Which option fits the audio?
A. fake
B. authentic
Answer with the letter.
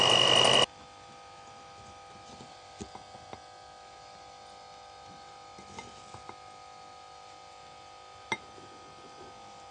B